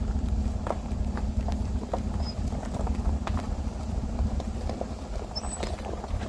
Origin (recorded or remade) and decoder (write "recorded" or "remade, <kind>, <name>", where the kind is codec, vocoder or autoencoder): remade, vocoder, BigVGAN v2